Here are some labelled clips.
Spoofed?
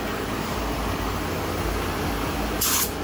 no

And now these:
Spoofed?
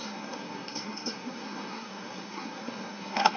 yes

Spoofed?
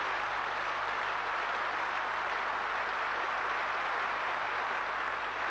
no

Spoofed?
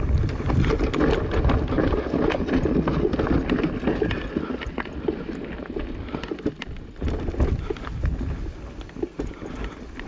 no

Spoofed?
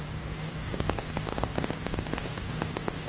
yes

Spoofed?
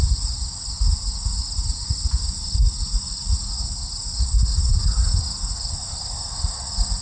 no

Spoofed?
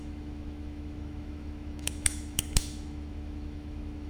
yes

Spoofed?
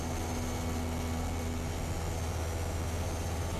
no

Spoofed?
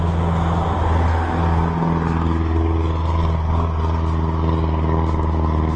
no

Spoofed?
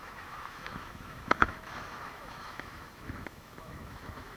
yes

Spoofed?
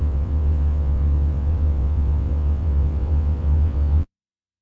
yes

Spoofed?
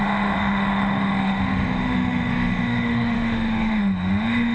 yes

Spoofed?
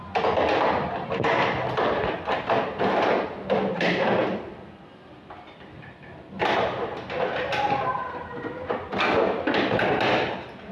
no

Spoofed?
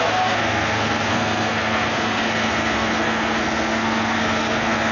yes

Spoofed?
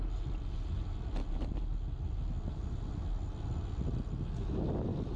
no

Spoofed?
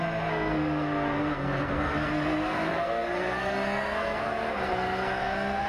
yes